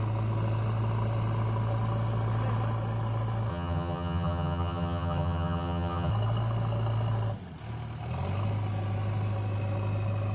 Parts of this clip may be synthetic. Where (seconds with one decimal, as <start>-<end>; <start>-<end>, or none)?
3.5-6.1